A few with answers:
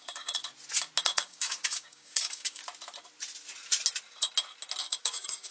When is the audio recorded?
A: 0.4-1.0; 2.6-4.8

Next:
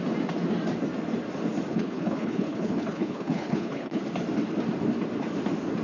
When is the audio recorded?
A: 0.0-1.7; 4.0-5.8

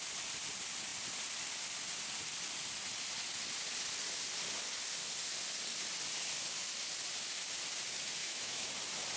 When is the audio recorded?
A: 0.0-8.2; 8.7-9.2

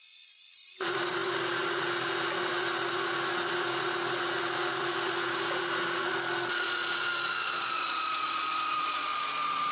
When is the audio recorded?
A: none

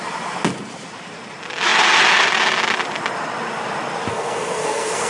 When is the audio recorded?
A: 0.0-4.1